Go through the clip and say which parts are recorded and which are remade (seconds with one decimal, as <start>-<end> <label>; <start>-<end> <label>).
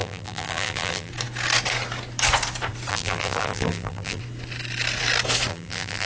0.0-1.1 remade; 1.1-2.9 recorded; 2.9-4.2 remade; 4.2-5.5 recorded; 5.5-6.1 remade